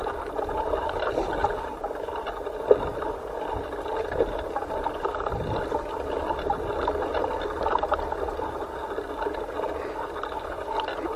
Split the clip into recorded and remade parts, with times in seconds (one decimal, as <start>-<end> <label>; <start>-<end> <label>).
0.0-1.4 remade; 1.4-2.2 recorded; 2.2-2.9 remade; 2.9-3.9 recorded; 3.9-8.8 remade; 8.8-9.8 recorded; 9.8-11.2 remade